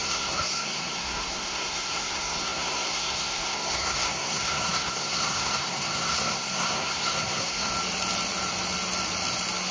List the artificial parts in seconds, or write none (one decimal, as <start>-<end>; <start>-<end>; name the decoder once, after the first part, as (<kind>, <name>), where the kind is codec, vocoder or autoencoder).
0.0-7.7 (codec, SNAC)